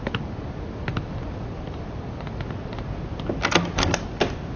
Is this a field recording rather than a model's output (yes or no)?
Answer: yes